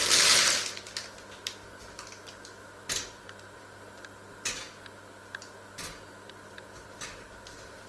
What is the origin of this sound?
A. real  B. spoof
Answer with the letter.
A